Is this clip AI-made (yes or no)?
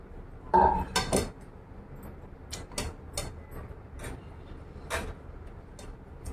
no